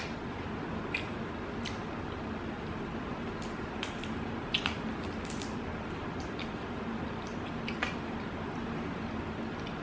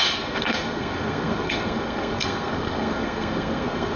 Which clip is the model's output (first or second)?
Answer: second